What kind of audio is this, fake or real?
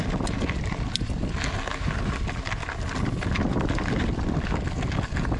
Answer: real